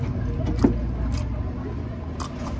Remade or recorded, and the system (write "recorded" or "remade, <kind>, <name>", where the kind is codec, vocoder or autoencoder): recorded